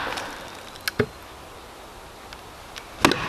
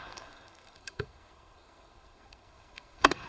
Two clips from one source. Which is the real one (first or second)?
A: first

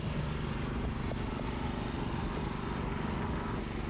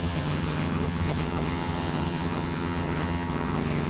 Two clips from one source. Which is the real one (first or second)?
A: first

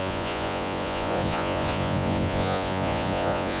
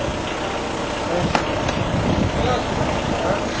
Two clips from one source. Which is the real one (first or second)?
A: second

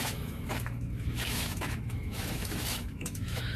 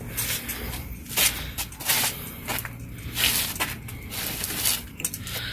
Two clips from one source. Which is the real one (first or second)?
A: second